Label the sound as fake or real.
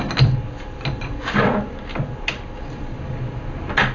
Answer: real